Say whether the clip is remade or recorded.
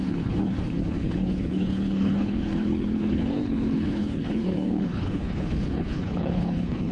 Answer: remade